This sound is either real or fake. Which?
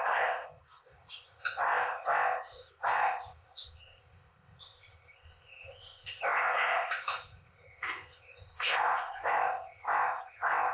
fake